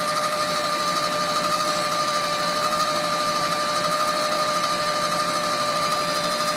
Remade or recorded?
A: remade